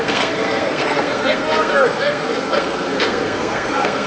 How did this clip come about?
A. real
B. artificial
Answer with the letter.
B